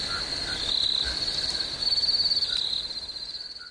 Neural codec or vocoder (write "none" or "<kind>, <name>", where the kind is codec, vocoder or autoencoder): none